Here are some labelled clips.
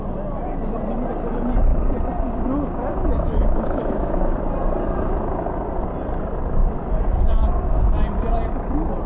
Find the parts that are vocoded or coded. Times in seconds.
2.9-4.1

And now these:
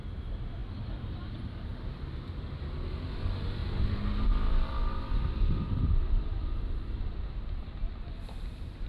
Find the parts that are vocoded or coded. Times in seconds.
none

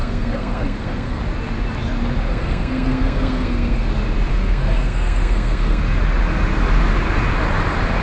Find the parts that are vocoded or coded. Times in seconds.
0.0-1.2; 2.3-3.9; 4.3-5.8

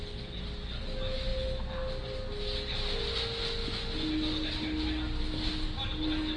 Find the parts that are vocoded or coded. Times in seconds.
none

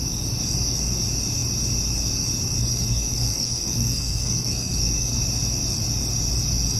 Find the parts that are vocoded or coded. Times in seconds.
2.6-5.2

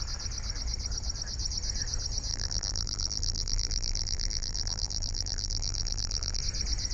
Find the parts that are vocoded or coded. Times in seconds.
2.3-6.4

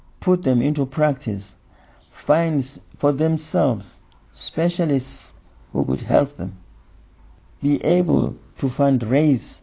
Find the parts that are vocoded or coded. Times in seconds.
5.6-6.2; 7.9-8.6

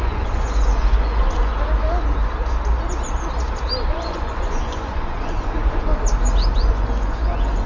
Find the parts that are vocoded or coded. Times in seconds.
0.0-1.5; 3.9-5.9; 6.5-7.7